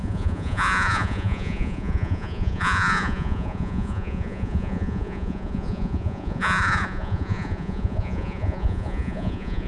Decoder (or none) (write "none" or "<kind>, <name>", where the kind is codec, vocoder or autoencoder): vocoder, Vocos